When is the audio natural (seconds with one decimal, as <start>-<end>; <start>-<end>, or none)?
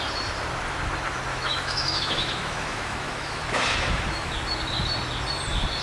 0.0-1.3; 4.3-5.8